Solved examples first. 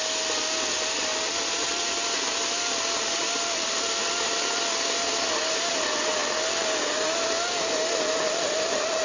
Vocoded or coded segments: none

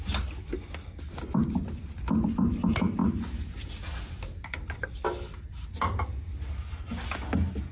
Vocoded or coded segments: none

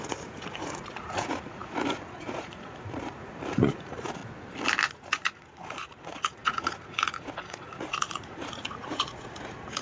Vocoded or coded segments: 0.0-4.2; 4.9-9.8

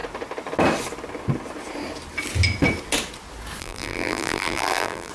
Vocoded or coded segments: 3.6-5.1

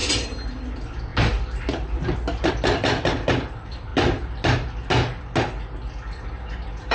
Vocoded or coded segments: none

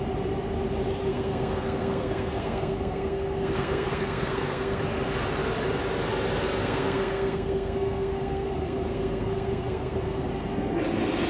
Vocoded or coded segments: 1.1-4.8; 6.6-10.3

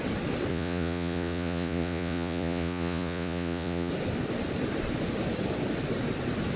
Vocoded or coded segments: 0.5-3.9

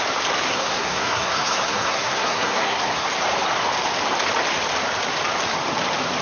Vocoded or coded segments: 0.5-3.1